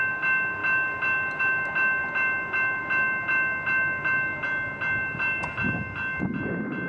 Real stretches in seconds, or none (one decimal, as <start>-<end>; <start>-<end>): 0.0-6.9